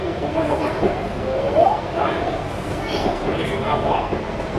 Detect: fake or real fake